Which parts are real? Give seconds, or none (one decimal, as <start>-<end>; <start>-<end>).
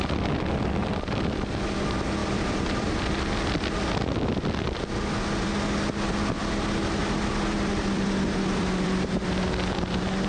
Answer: 0.0-0.8; 1.6-2.2; 3.6-7.0; 9.7-10.3